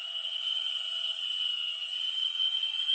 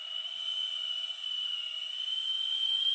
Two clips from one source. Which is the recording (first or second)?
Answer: second